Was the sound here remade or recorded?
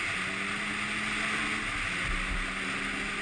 recorded